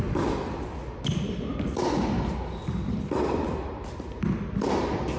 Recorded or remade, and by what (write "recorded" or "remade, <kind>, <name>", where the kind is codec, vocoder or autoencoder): recorded